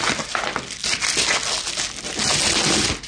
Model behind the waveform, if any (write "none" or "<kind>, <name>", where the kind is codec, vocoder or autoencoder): none